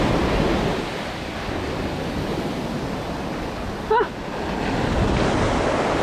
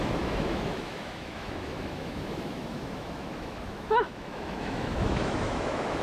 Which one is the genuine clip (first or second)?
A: first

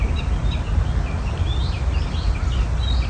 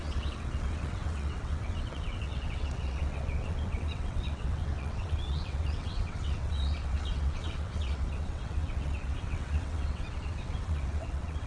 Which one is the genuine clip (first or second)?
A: first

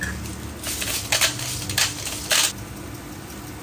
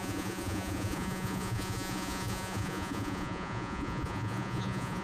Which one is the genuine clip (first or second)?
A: first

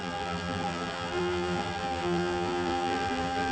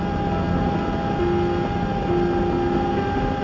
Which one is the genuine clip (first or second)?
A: second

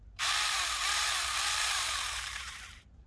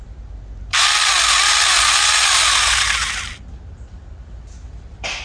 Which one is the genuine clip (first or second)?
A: second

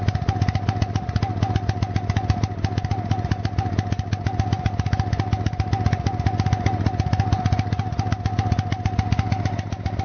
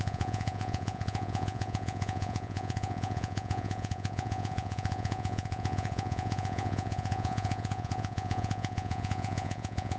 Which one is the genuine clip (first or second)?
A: first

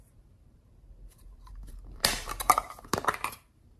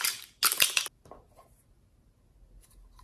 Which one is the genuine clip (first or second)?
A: second